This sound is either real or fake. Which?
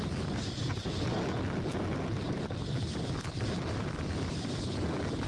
real